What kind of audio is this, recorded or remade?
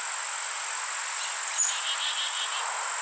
recorded